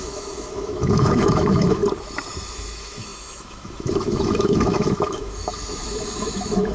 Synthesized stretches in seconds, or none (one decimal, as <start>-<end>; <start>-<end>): 0.0-1.8; 2.5-6.7